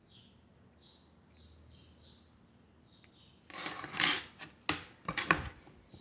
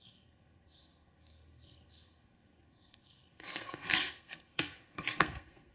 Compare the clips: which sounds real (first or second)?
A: first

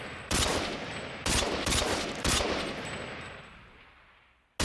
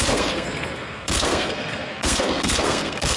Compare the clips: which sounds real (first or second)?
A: first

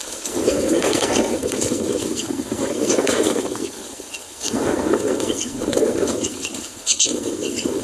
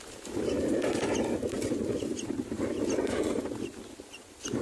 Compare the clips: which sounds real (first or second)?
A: second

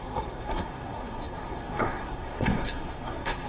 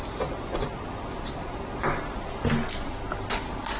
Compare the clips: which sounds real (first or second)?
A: second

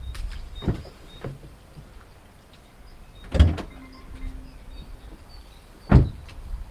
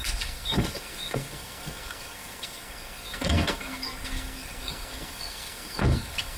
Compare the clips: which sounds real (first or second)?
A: first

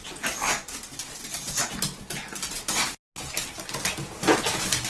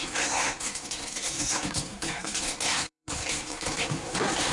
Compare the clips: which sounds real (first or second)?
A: first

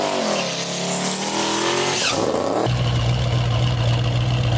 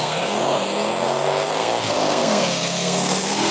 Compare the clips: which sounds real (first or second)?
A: first